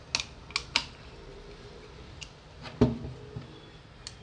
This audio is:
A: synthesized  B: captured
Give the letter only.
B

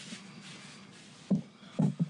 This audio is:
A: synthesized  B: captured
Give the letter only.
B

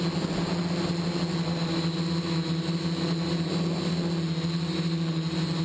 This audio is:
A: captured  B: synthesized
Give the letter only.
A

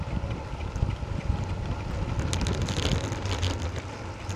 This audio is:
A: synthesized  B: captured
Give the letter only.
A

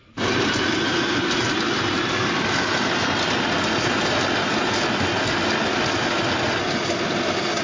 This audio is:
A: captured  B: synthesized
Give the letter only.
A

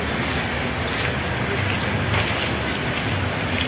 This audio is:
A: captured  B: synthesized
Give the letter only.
A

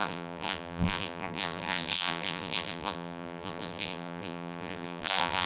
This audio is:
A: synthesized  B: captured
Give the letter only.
A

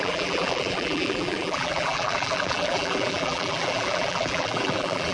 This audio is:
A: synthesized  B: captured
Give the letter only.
A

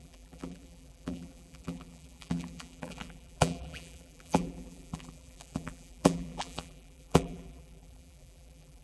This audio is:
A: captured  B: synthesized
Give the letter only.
B